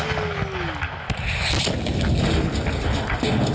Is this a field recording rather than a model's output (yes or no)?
yes